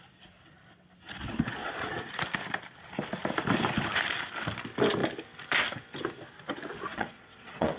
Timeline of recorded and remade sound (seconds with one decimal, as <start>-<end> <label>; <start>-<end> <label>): 0.0-1.6 recorded; 1.6-2.2 remade; 2.2-6.9 recorded; 6.9-7.8 remade